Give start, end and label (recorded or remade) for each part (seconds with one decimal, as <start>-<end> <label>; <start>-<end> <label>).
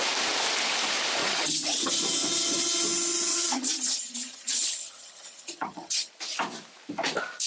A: 0.0-1.2 recorded; 1.2-1.9 remade; 1.9-3.3 recorded; 3.3-6.1 remade; 6.1-7.5 recorded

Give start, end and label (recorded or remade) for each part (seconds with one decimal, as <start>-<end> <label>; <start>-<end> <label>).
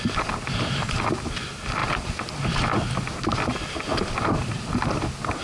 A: 0.0-5.4 recorded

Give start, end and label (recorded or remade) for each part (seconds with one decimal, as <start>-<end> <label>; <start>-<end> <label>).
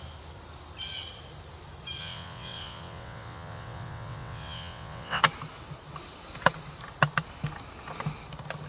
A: 0.0-2.0 recorded; 2.0-5.2 remade; 5.2-8.7 recorded